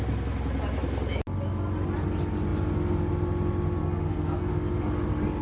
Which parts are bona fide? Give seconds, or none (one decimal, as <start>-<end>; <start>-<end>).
0.0-3.8; 4.5-5.4